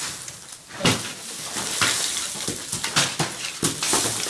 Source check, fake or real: real